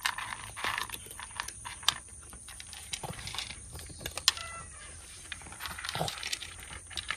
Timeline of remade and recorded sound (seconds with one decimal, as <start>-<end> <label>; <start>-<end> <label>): 0.0-0.8 recorded; 0.8-3.6 remade; 3.6-4.4 recorded; 4.4-6.6 remade; 6.6-7.2 recorded